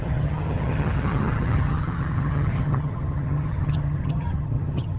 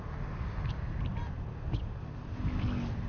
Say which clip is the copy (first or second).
first